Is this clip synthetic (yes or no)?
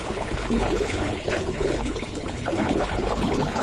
yes